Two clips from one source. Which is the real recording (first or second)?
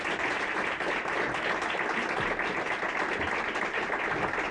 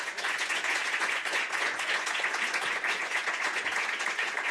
first